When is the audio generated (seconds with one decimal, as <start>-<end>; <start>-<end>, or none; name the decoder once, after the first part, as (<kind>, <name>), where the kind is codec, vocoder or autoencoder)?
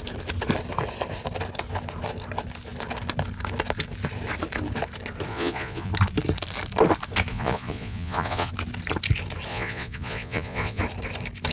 5.3-5.9 (vocoder, Vocos); 7.3-8.5; 9.5-10.8